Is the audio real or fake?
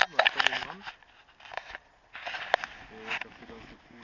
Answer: real